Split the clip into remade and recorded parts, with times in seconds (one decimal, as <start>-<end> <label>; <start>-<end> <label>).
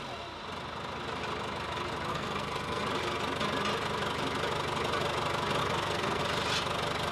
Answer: 0.0-2.1 recorded; 2.1-2.8 remade; 2.8-5.6 recorded; 5.6-6.2 remade; 6.2-7.1 recorded